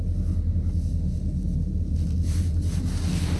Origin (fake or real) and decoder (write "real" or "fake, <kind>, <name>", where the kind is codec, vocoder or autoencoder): real